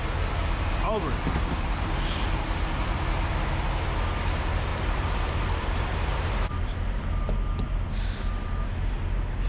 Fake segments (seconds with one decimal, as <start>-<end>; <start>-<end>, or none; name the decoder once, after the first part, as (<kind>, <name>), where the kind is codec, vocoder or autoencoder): 0.4-3.3 (vocoder, BigVGAN v2); 4.7-6.5